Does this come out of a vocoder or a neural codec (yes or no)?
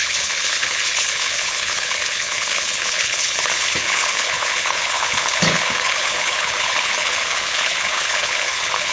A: yes